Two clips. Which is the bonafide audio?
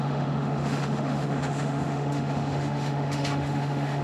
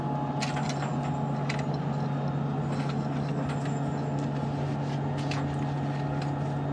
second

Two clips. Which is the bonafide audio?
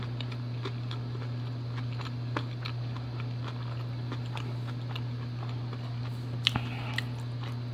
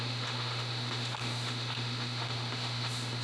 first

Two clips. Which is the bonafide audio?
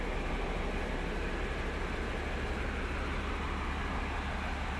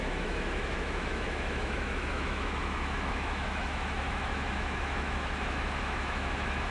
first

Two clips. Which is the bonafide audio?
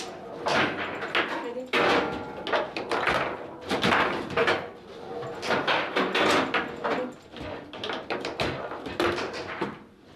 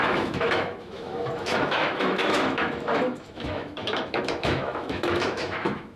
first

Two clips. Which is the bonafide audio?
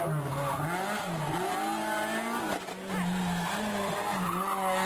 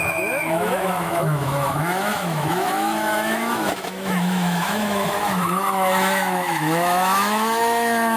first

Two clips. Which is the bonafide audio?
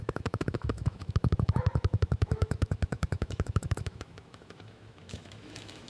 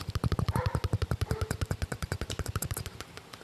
second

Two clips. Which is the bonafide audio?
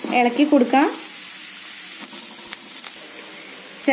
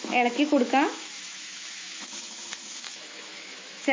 first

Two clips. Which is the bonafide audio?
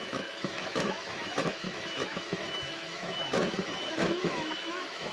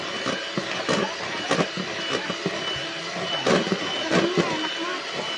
second